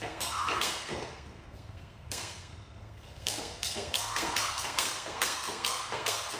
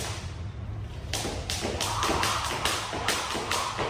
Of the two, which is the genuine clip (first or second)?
second